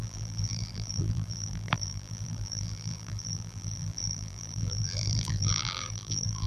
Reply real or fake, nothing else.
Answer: fake